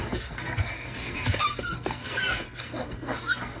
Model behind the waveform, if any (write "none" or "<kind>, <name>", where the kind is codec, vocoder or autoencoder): codec, SNAC